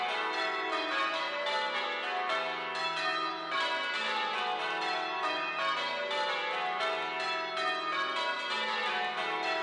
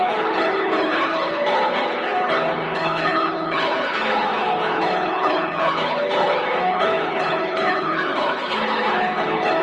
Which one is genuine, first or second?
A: first